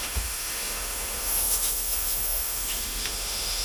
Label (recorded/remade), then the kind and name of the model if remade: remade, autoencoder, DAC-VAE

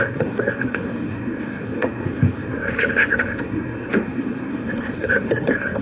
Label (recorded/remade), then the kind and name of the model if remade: remade, codec, SNAC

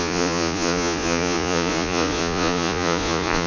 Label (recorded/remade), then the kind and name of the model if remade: remade, vocoder, Vocos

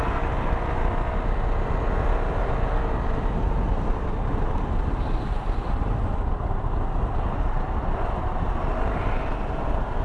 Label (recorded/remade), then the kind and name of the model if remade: recorded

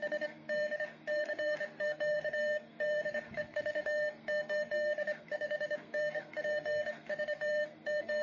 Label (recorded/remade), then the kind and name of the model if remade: remade, codec, SNAC